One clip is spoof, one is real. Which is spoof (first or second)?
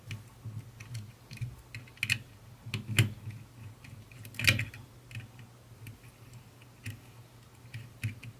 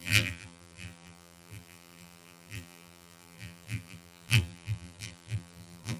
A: second